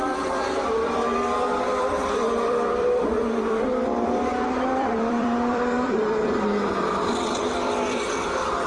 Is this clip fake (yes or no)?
yes